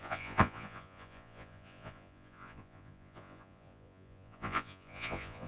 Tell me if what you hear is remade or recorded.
remade